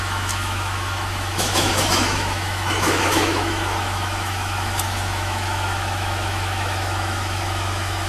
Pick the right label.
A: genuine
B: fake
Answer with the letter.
B